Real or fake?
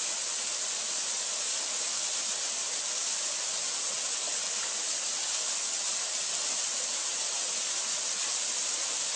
real